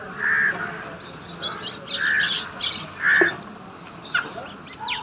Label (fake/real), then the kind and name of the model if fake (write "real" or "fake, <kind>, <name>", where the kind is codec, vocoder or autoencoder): real